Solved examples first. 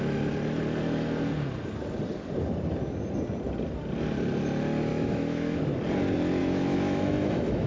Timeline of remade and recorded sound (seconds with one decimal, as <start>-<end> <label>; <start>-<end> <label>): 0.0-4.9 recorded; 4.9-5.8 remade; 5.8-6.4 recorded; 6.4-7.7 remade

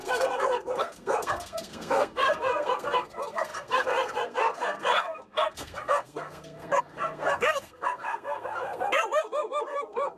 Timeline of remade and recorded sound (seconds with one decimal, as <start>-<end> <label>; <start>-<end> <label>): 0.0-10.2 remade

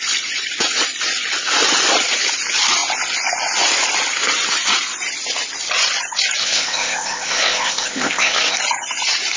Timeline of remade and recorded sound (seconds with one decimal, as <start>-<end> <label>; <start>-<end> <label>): 0.0-6.4 recorded; 6.4-8.6 remade; 8.6-9.4 recorded

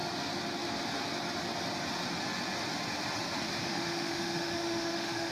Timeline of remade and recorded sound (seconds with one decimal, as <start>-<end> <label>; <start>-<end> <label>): 0.0-3.6 recorded; 3.6-5.3 remade